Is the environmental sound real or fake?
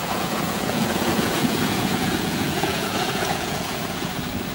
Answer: fake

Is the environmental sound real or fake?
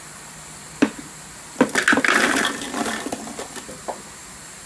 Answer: real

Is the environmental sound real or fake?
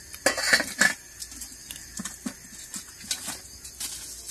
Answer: real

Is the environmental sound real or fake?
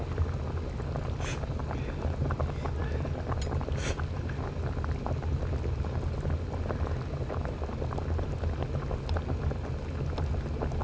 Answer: real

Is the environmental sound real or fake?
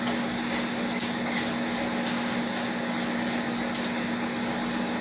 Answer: real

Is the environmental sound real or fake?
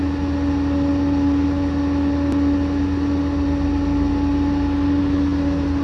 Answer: real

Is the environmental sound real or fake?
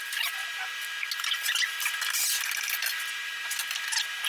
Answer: real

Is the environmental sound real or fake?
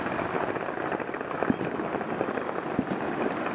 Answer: real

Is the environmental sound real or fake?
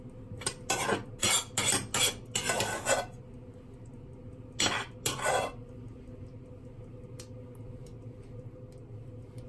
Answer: real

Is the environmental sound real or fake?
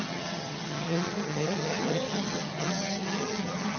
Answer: fake